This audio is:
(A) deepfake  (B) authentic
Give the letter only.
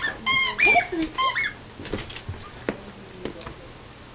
B